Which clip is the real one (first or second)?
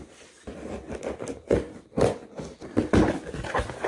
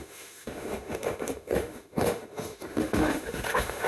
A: first